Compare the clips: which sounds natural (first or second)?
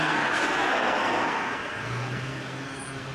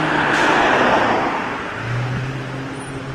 second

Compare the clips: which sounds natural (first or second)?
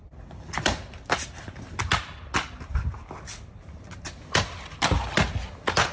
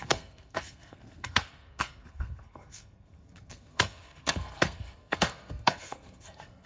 first